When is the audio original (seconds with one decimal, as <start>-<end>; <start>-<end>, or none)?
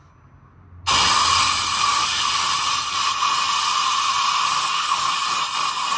0.0-6.0